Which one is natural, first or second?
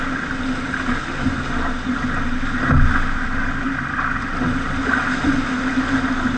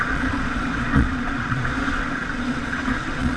first